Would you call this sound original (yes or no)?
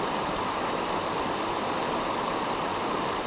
yes